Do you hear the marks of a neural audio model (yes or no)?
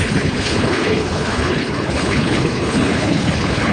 yes